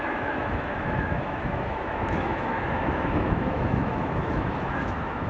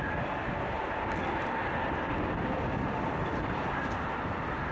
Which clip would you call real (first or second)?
second